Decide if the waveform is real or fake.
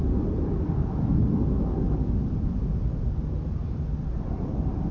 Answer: real